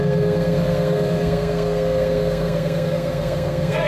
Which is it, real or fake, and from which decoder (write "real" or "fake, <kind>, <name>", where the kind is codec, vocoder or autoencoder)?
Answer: fake, codec, SNAC